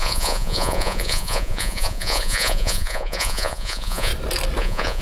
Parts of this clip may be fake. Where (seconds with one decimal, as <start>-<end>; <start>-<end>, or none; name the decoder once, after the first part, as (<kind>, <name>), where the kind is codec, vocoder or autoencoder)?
0.0-4.1 (vocoder, Vocos); 4.6-5.0